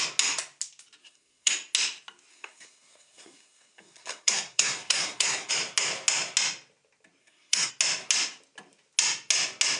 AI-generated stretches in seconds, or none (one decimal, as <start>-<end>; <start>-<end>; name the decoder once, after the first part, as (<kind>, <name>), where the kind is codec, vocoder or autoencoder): 1.0-1.5 (codec, SNAC); 2.3-5.5; 7.2-7.7